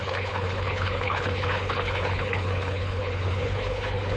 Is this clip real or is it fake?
fake